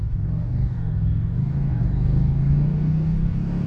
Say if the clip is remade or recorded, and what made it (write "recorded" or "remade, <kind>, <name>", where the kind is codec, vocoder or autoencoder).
remade, codec, DAC